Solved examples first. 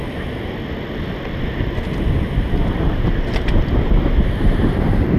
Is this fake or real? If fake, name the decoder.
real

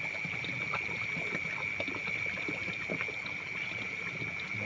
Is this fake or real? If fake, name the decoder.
real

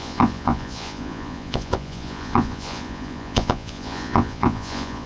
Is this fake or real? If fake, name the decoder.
fake, vocoder, Vocos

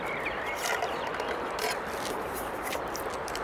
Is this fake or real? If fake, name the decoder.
real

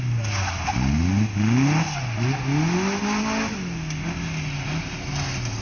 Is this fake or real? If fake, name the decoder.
real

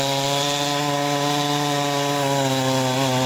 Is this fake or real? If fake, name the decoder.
real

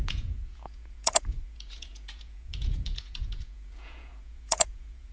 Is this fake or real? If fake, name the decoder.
fake, vocoder, Vocos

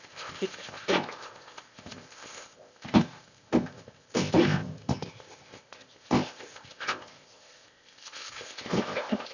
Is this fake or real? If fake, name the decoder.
fake, codec, ZipCodec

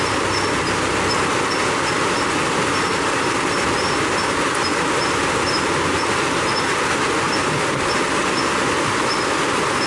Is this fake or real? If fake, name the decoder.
real